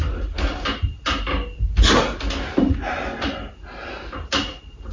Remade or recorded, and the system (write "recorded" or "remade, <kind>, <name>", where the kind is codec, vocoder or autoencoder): recorded